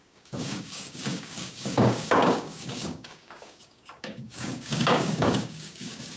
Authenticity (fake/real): fake